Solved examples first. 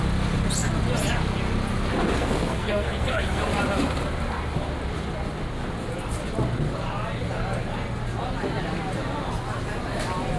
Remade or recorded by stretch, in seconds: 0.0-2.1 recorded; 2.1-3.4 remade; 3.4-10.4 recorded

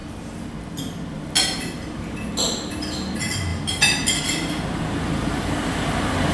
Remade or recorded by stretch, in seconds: 0.0-6.3 recorded